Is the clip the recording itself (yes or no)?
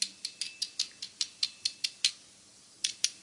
yes